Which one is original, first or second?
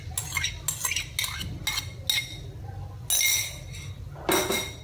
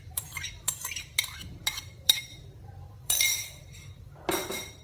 first